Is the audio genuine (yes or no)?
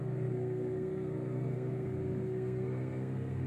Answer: no